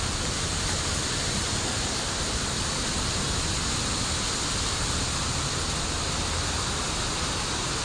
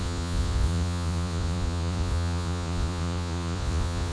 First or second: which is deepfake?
second